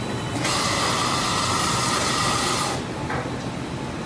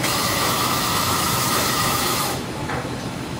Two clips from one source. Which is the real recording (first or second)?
first